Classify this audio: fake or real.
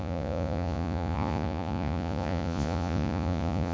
fake